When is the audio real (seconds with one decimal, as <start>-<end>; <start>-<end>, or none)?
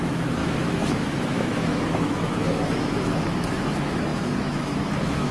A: none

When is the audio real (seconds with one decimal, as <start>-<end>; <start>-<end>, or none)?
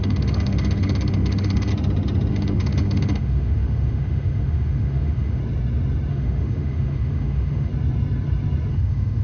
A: 1.7-2.3; 5.4-6.1; 7.7-8.7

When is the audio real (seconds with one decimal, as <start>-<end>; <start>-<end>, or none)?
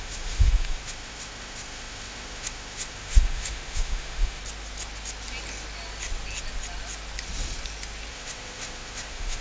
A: 4.4-8.1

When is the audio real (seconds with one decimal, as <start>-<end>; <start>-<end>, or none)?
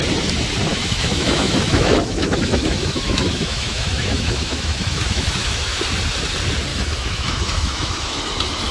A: 0.0-0.7; 5.8-6.7; 8.2-8.7